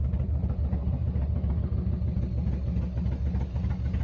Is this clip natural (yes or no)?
yes